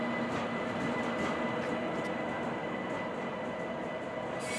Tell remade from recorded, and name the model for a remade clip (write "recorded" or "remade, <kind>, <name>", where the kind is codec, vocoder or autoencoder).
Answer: recorded